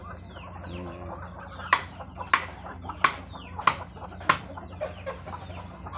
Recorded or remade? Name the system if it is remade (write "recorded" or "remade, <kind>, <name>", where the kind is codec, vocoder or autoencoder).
recorded